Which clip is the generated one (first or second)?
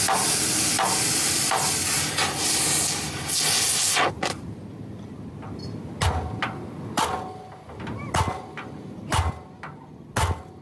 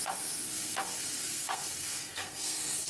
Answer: second